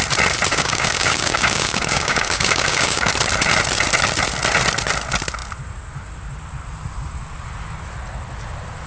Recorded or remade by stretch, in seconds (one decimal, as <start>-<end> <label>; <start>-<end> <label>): 0.0-0.5 recorded; 0.5-3.1 remade; 3.1-8.9 recorded